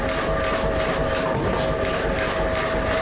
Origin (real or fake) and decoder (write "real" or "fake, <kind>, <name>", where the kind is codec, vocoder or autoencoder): real